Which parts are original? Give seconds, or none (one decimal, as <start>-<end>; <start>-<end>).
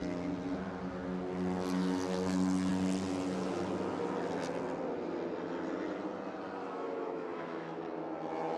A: 0.0-6.6; 7.8-8.6